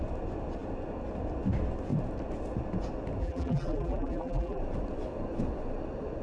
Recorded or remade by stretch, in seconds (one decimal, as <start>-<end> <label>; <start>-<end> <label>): 0.0-3.2 recorded; 3.2-4.6 remade; 4.6-6.2 recorded